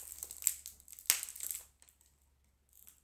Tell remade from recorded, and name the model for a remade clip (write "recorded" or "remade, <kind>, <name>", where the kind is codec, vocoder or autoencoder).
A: recorded